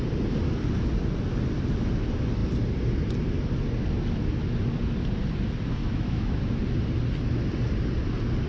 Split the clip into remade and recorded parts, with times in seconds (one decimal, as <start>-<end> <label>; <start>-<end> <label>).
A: 0.0-5.8 recorded; 5.8-6.4 remade; 6.4-8.5 recorded